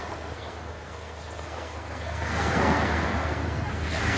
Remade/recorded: remade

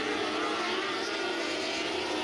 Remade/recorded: recorded